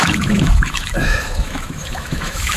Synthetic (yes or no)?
yes